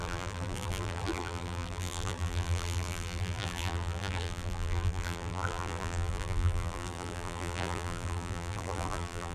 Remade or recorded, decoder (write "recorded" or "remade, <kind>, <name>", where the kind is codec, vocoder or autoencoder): remade, vocoder, BigVGAN v2